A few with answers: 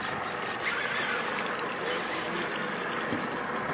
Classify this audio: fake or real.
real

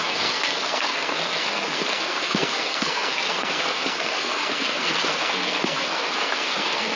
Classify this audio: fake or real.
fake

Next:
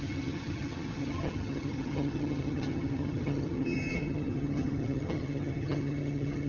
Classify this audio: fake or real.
fake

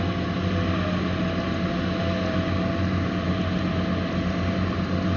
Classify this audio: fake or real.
real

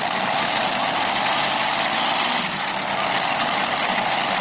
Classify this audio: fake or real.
real